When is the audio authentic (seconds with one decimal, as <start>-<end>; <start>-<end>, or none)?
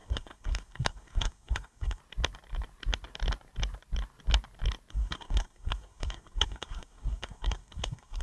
2.0-4.9